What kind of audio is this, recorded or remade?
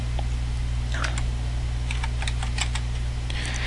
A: recorded